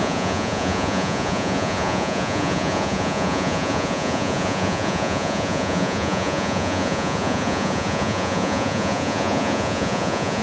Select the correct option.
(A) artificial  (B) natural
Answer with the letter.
A